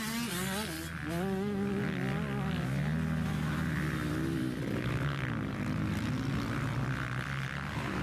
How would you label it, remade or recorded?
recorded